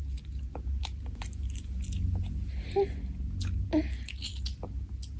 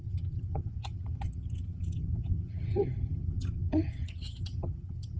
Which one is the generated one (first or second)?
second